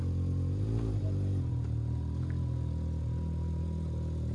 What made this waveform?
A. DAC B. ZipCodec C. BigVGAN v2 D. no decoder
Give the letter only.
D